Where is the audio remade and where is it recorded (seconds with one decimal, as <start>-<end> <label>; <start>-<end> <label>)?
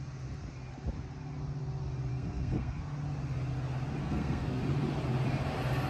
0.0-2.1 recorded; 2.1-2.8 remade; 2.8-4.0 recorded; 4.0-4.6 remade; 4.6-5.9 recorded